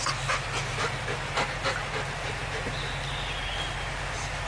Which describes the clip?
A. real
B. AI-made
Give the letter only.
A